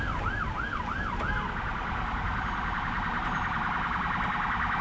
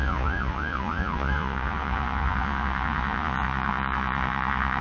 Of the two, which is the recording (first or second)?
first